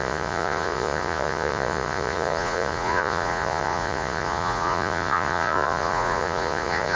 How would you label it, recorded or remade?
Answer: remade